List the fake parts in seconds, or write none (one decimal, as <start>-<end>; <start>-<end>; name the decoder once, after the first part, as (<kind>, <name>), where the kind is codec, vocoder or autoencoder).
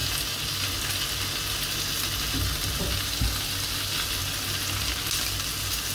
none